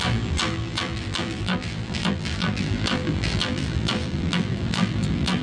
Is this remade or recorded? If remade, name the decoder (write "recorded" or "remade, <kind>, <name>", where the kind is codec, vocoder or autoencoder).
remade, vocoder, BigVGAN v2